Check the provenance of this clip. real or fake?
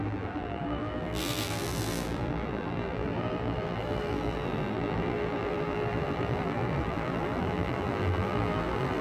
fake